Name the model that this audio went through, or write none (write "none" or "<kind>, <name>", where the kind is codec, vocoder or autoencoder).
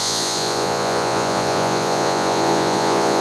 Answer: vocoder, Vocos